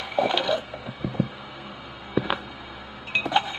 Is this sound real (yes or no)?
no